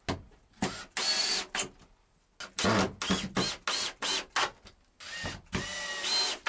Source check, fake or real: real